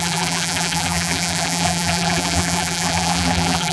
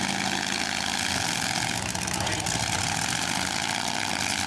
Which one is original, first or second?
second